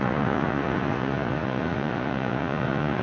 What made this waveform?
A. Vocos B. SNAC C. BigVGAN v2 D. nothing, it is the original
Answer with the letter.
A